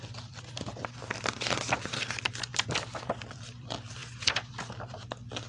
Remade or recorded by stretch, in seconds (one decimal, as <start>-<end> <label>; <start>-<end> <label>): 0.0-2.5 remade; 2.5-3.3 recorded; 3.3-5.5 remade

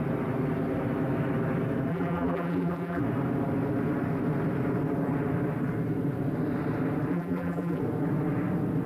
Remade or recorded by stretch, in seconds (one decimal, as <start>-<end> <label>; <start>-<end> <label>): 0.0-1.9 recorded; 1.9-3.0 remade; 3.0-7.1 recorded; 7.1-7.8 remade; 7.8-8.9 recorded

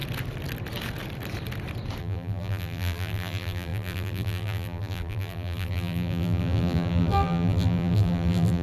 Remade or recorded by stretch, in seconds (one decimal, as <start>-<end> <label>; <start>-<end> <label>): 0.0-2.0 recorded; 2.0-8.6 remade

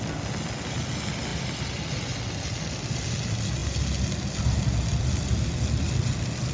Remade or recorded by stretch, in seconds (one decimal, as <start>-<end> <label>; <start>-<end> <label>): 0.0-6.5 recorded

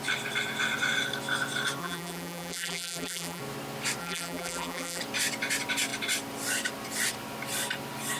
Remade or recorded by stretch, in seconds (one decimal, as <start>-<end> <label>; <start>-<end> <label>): 0.0-1.8 recorded; 1.8-3.4 remade; 3.4-4.0 recorded; 4.0-5.0 remade; 5.0-8.2 recorded

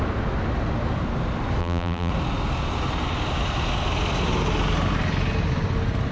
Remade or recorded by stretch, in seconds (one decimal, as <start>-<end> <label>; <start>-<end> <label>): 0.0-1.6 recorded; 1.6-2.1 remade; 2.1-6.1 recorded

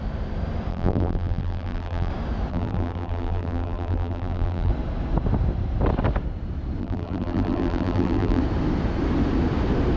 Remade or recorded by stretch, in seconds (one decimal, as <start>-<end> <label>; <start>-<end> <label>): 0.0-0.7 recorded; 0.7-2.1 remade; 2.1-2.5 recorded; 2.5-4.7 remade; 4.7-6.8 recorded; 6.8-8.4 remade; 8.4-10.0 recorded